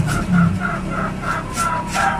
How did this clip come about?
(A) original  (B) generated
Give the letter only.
A